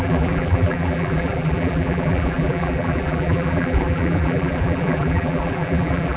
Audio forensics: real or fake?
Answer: fake